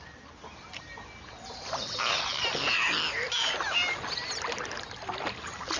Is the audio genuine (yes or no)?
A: yes